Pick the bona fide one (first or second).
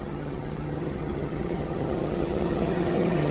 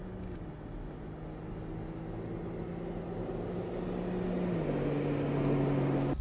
second